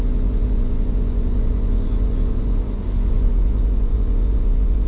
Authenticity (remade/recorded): remade